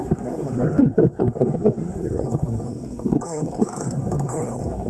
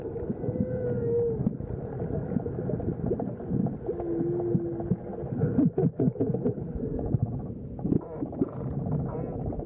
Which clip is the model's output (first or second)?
first